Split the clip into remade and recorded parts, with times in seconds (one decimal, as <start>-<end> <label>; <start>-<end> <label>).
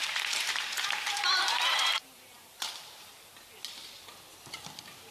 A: 0.0-3.1 remade; 3.1-5.1 recorded